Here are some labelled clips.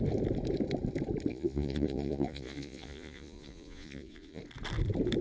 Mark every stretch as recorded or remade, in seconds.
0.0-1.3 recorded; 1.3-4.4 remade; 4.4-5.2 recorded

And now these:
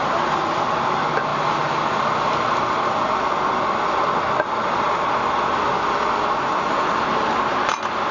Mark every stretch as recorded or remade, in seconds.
0.0-8.1 recorded

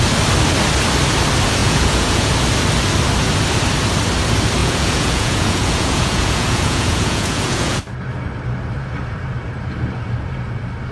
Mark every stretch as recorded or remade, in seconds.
0.0-1.6 recorded; 1.6-2.3 remade; 2.3-4.6 recorded; 4.6-7.8 remade; 7.8-10.9 recorded

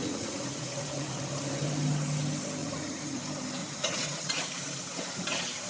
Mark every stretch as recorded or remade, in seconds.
0.0-1.2 remade; 1.2-2.6 recorded; 2.6-3.2 remade; 3.2-3.6 recorded; 3.6-4.4 remade; 4.4-5.7 recorded

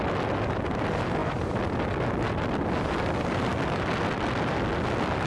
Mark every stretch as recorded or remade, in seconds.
0.0-5.3 recorded

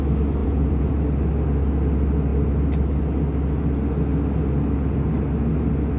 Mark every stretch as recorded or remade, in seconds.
0.0-0.4 recorded; 0.4-0.9 remade; 0.9-6.0 recorded